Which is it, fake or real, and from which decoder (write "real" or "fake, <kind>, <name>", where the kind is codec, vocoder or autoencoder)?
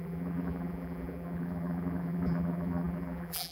fake, vocoder, BigVGAN v2